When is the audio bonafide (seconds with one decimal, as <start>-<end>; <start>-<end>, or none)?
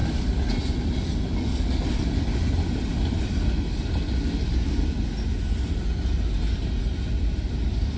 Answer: 0.0-8.0